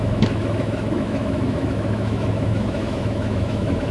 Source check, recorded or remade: remade